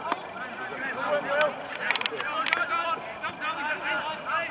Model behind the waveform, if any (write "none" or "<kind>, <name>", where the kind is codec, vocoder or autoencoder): none